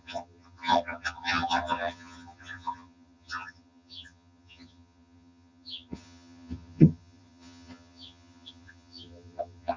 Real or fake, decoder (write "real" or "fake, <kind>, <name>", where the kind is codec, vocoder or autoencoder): fake, vocoder, HiFi-GAN